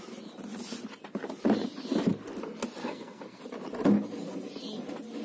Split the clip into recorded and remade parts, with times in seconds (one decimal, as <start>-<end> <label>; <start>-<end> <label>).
0.0-2.8 recorded; 2.8-3.4 remade; 3.4-5.2 recorded